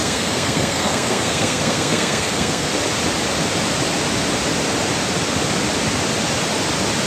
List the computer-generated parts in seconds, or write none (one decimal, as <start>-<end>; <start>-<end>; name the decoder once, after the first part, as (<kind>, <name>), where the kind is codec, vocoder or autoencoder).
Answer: 0.0-2.7 (codec, SNAC)